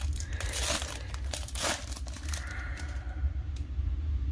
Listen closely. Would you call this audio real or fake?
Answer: fake